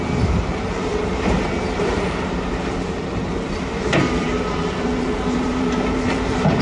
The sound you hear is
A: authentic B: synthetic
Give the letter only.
B